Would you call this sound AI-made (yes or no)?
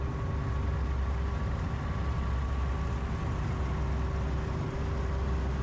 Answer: no